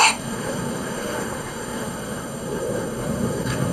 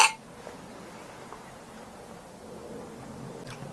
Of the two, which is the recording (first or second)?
second